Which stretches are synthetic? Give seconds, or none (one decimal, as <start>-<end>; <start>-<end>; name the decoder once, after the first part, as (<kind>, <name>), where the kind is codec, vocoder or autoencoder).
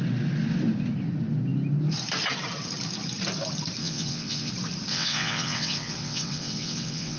3.8-4.5 (vocoder, WaveNeXt); 4.9-7.2